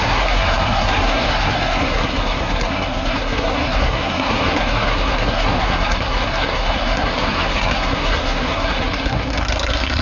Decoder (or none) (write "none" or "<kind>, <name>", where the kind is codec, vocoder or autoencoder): codec, SNAC